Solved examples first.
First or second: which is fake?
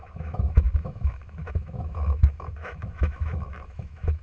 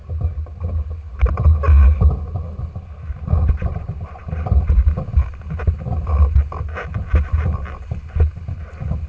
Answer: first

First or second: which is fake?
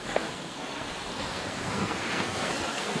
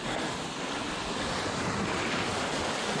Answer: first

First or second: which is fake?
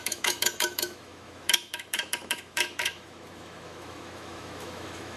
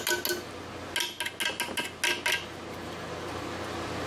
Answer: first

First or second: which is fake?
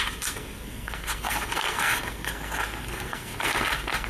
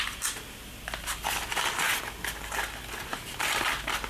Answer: first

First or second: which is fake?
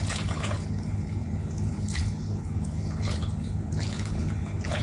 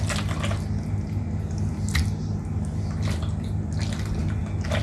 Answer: first